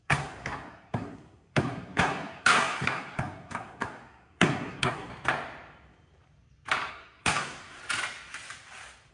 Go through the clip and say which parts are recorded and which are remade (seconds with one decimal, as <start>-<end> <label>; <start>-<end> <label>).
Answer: 0.0-5.1 remade; 5.1-6.9 recorded; 6.9-7.8 remade; 7.8-9.1 recorded